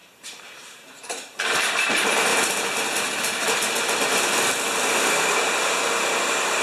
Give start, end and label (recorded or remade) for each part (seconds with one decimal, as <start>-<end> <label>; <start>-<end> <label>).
0.0-2.3 remade; 2.3-6.6 recorded

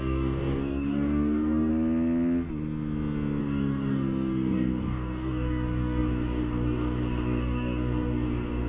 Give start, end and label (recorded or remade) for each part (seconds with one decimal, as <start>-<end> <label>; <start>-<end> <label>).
0.0-1.7 remade; 1.7-3.4 recorded; 3.4-8.7 remade